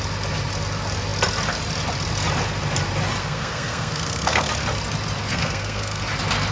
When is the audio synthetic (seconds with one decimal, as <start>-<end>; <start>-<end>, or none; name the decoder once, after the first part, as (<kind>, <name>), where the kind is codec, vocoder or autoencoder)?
3.2-4.5 (codec, SNAC); 5.3-6.0

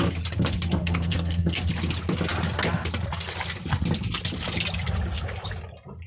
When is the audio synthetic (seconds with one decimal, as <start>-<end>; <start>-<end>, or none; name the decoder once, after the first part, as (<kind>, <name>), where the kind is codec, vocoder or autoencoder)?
0.8-1.6 (codec, SNAC)

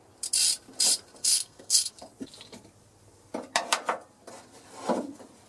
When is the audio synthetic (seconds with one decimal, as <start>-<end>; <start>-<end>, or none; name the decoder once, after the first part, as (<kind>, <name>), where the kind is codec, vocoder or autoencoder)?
1.2-1.9 (codec, SNAC)

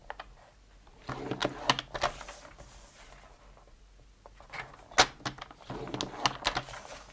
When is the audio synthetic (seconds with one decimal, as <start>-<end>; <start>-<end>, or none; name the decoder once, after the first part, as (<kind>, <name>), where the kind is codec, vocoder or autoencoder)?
none

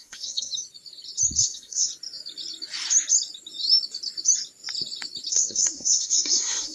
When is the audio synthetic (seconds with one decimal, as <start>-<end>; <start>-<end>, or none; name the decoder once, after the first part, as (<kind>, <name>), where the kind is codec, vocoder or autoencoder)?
0.0-0.5 (codec, SNAC); 1.4-1.9; 5.3-6.7